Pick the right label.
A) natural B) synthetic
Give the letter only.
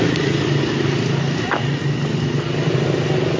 A